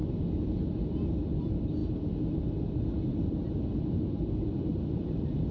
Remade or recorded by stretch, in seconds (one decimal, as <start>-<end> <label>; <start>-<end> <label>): 0.0-5.5 recorded